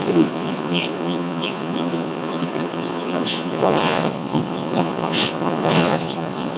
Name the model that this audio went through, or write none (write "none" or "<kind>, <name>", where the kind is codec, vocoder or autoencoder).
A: vocoder, Vocos